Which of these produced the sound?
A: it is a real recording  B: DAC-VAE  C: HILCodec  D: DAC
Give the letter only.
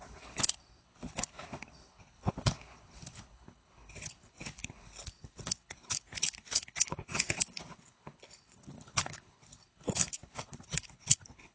C